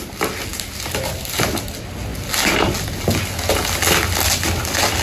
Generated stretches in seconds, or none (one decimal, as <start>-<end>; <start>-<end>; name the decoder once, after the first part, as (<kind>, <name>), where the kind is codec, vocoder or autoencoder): none